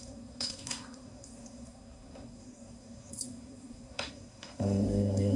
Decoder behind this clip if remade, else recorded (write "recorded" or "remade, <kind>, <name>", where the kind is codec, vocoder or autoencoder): remade, codec, SNAC